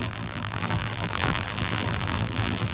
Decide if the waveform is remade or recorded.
remade